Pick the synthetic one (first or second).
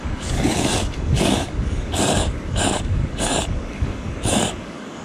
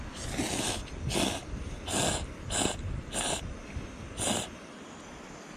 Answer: first